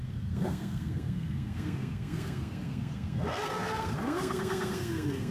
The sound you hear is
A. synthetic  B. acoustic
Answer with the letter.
A